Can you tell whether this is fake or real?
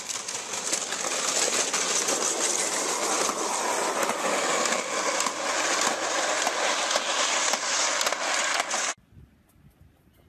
real